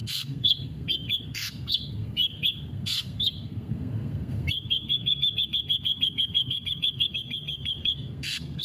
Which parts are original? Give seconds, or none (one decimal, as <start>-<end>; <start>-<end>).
none